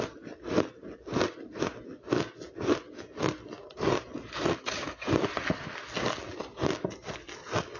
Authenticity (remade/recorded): recorded